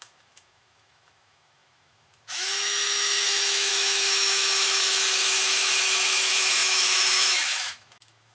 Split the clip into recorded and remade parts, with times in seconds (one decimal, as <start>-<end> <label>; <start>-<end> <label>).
0.0-8.3 remade